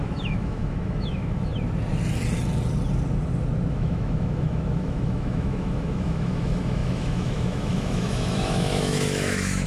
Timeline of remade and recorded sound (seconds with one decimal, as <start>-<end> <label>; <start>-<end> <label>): 0.0-1.5 remade; 1.5-3.7 recorded; 3.7-9.7 remade